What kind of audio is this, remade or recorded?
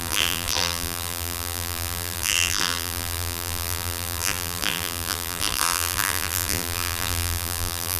remade